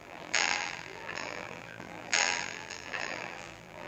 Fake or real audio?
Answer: fake